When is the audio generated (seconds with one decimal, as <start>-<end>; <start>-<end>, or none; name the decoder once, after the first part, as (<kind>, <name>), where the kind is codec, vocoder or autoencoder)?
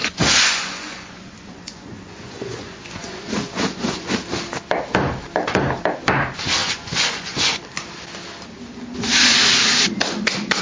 0.0-4.1 (vocoder, Vocos); 6.6-7.6